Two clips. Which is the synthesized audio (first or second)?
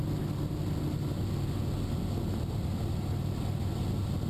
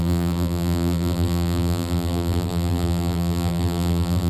second